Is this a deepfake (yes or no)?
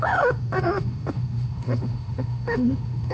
yes